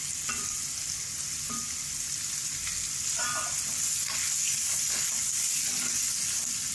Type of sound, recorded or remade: recorded